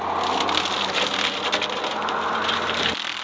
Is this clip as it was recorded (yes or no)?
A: yes